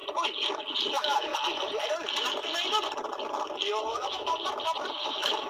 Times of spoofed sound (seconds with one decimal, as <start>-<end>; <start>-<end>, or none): 0.9-1.3; 3.9-4.3; 4.9-5.5